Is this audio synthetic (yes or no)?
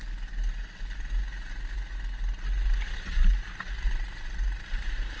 no